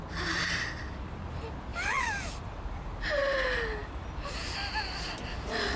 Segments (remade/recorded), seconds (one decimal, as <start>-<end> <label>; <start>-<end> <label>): 0.0-5.8 recorded